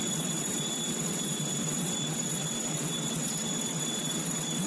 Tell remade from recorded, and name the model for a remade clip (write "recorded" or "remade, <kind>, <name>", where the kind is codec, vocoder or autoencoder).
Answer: remade, vocoder, WaveNeXt